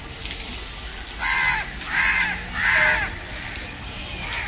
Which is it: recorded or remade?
recorded